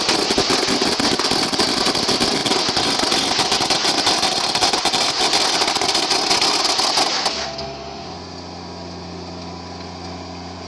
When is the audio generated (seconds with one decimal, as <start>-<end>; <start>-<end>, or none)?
none